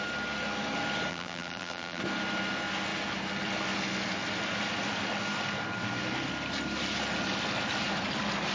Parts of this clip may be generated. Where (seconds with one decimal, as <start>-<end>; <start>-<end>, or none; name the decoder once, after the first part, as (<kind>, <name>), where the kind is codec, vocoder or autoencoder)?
1.1-2.0 (vocoder, BigVGAN v2)